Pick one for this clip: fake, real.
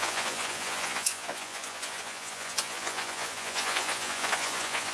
fake